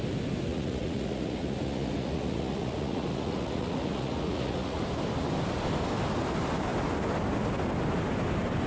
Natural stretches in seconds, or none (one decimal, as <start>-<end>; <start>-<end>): 0.0-0.5; 4.8-8.7